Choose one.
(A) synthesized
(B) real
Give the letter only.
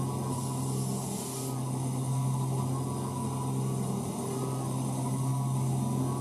B